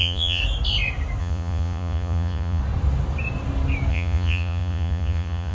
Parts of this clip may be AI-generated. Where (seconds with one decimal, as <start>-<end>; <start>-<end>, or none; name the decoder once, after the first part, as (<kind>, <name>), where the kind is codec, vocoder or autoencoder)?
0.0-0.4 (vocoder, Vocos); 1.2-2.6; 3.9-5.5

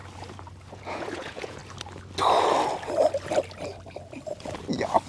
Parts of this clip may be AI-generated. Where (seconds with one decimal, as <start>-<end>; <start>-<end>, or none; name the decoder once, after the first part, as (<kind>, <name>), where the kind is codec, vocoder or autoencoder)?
0.7-1.6 (vocoder, Vocos)

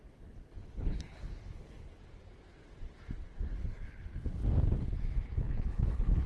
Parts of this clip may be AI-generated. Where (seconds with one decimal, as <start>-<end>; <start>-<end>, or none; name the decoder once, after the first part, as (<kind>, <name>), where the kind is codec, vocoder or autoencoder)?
0.0-2.0 (codec, HILCodec); 3.6-4.4; 5.4-6.3

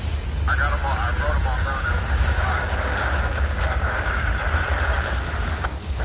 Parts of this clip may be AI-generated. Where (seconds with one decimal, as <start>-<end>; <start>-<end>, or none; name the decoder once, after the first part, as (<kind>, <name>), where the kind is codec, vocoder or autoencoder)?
1.6-4.3 (codec, DAC); 4.9-6.0

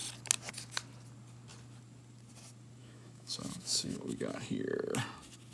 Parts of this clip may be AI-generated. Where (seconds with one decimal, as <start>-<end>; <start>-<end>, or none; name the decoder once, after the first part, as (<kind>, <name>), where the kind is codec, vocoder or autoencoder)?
2.8-4.6 (autoencoder, DAC-VAE)